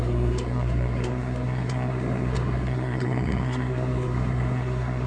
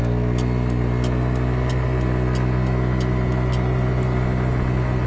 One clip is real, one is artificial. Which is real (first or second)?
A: second